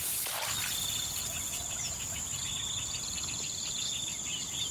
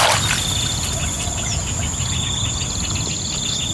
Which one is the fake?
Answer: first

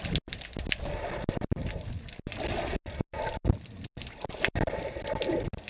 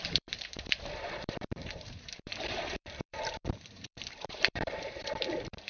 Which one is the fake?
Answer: second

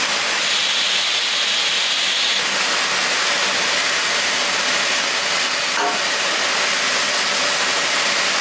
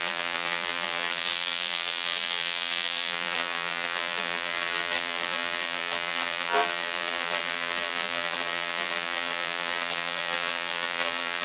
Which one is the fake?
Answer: second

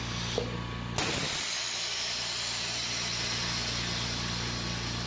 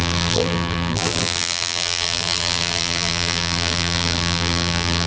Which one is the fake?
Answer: second